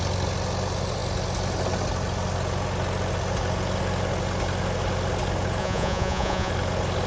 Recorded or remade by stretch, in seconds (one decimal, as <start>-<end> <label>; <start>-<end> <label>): 0.0-5.6 recorded; 5.6-6.5 remade; 6.5-7.1 recorded